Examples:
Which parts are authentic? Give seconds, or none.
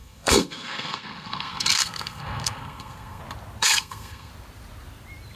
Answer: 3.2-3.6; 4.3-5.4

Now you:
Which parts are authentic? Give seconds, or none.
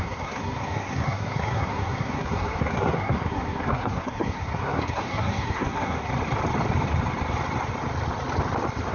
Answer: 6.1-8.9